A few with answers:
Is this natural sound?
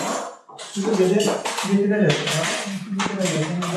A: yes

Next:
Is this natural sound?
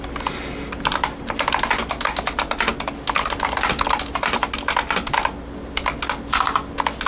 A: yes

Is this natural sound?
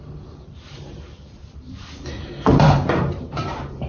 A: no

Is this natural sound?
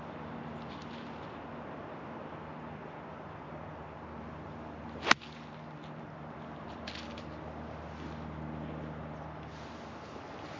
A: yes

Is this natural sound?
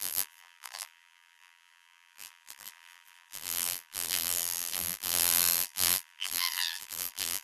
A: no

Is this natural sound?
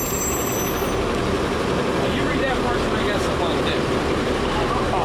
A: yes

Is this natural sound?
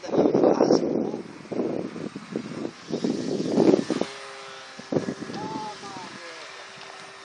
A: no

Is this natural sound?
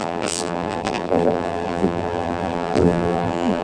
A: no